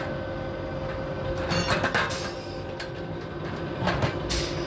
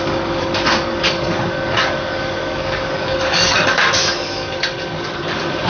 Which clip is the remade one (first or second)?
second